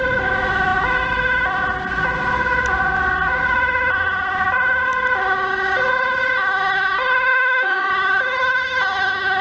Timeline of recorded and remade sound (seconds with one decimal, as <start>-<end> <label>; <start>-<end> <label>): 0.0-7.3 recorded; 7.3-7.9 remade; 7.9-9.4 recorded